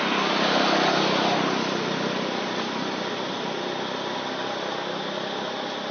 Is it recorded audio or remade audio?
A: recorded